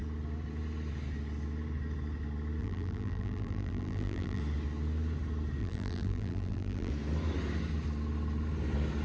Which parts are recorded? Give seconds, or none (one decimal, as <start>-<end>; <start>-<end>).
0.0-2.6; 4.4-5.6; 6.9-9.0